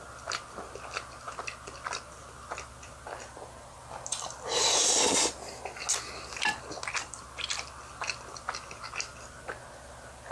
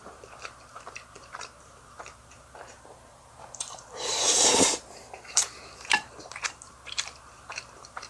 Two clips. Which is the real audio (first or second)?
first